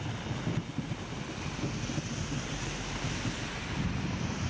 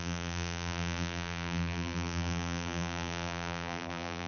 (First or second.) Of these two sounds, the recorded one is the first